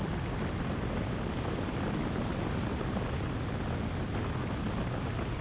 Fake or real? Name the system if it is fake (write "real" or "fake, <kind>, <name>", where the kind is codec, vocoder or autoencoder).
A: real